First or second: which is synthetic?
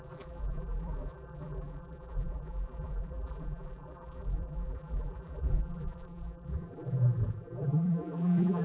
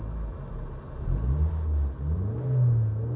first